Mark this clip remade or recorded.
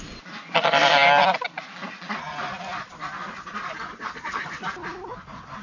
recorded